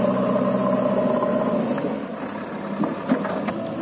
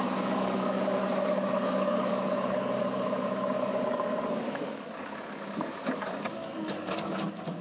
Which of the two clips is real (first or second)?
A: first